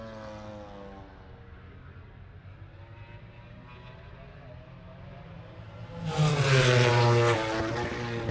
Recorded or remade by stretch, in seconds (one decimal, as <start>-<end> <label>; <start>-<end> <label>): 0.0-6.3 recorded; 6.3-6.9 remade; 6.9-8.3 recorded